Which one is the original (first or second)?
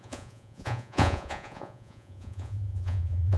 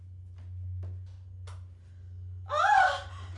second